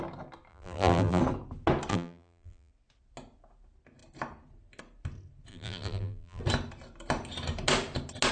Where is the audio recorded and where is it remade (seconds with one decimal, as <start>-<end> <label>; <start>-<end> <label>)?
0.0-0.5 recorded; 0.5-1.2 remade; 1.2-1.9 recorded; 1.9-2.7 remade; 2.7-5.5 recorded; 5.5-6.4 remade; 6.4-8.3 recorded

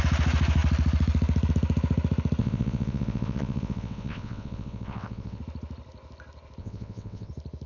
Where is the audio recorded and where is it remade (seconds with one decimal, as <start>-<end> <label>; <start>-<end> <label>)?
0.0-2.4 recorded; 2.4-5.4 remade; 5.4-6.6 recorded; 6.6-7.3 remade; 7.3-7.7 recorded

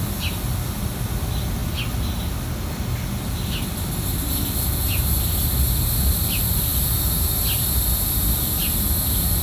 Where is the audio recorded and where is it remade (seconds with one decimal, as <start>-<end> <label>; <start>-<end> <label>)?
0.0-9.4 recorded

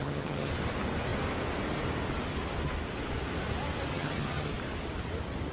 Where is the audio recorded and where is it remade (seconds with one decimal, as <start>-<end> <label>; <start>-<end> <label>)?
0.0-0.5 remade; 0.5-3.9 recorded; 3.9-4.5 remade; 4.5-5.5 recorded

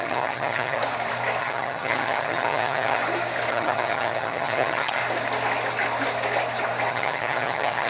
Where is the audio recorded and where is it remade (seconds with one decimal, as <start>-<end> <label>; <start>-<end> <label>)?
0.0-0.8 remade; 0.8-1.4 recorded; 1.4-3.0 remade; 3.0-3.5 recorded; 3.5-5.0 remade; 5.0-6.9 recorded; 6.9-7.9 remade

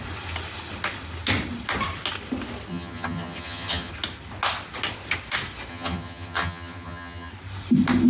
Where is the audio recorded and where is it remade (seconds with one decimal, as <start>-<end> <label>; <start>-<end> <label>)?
0.0-2.7 recorded; 2.7-3.9 remade; 3.9-5.7 recorded; 5.7-7.3 remade; 7.3-8.1 recorded

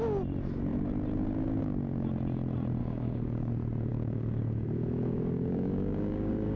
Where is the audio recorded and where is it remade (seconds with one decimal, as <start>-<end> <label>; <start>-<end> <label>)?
0.0-2.8 recorded; 2.8-3.5 remade; 3.5-3.9 recorded; 3.9-6.6 remade